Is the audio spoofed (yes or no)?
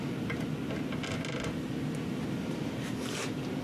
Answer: no